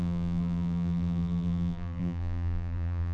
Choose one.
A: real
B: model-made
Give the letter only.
B